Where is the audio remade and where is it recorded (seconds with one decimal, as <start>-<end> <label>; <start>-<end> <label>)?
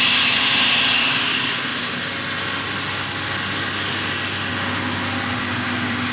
0.0-1.7 remade; 1.7-5.4 recorded; 5.4-6.1 remade